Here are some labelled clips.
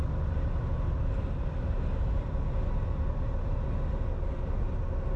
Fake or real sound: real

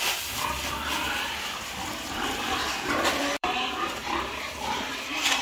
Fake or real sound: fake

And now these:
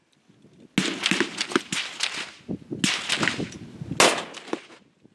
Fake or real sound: real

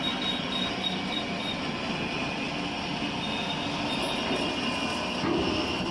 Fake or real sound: real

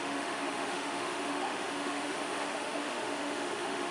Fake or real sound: fake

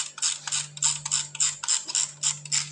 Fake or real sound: real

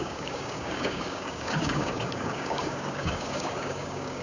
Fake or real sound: fake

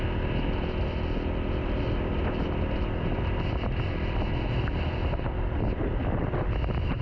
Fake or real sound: real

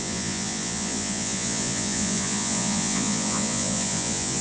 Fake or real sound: fake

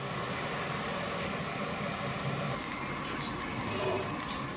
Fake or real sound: real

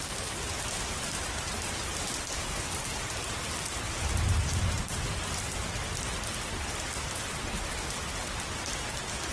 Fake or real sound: real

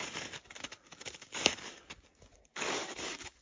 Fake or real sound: fake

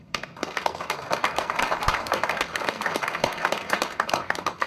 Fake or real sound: fake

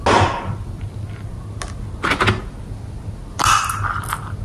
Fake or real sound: real